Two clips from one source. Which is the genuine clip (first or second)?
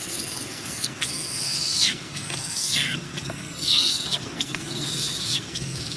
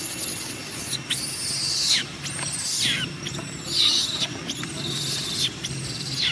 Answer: second